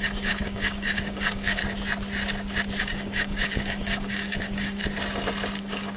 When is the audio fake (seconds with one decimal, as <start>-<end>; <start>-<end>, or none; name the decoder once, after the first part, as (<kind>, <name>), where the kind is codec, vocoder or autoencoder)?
0.0-1.6 (codec, DAC); 2.8-4.8; 5.6-6.0